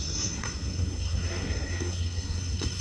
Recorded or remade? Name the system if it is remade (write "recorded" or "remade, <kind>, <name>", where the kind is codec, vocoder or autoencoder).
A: remade, codec, SNAC